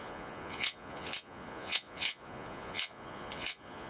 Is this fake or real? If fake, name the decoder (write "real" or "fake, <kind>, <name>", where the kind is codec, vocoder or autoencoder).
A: fake, vocoder, Vocos